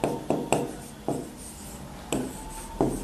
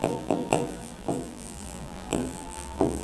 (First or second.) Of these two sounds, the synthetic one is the second